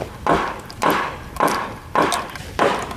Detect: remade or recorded recorded